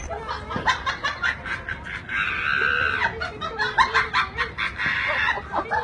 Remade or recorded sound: recorded